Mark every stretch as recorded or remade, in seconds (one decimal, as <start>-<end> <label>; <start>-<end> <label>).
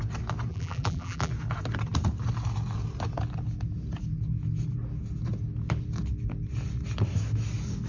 0.0-0.5 recorded; 0.5-1.3 remade; 1.3-7.9 recorded